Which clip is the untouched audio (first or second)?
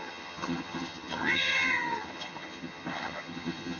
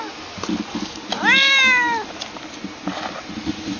second